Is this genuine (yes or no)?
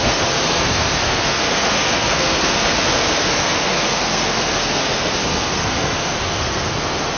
no